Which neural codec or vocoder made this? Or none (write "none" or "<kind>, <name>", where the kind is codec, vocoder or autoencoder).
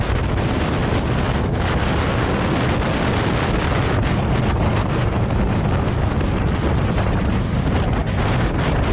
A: none